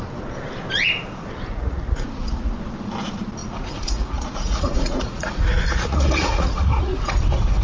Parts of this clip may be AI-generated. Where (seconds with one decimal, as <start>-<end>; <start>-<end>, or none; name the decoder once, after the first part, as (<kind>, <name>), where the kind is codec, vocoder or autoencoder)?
1.5-2.5 (vocoder, Vocos); 3.4-7.0